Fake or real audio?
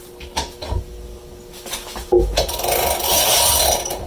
real